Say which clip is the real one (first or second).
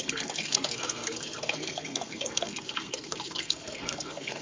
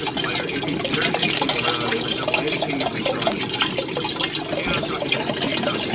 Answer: second